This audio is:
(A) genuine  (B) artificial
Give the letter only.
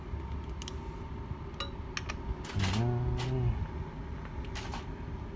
A